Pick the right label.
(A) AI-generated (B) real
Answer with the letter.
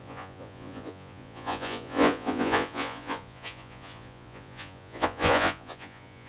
A